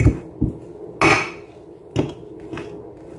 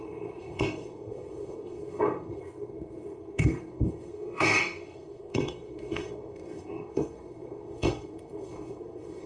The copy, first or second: second